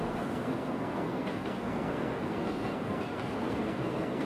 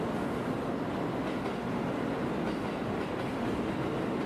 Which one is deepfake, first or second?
first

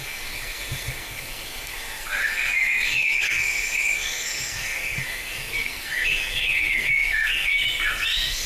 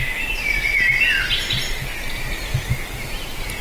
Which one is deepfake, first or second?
first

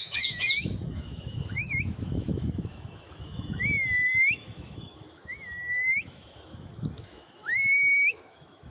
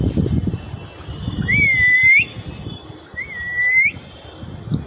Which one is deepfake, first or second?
first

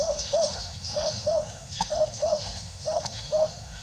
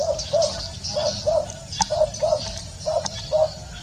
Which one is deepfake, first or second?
first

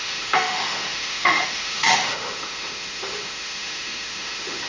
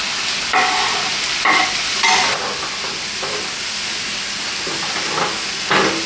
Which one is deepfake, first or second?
first